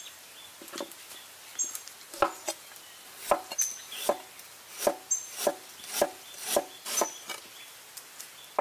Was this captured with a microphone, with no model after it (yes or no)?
yes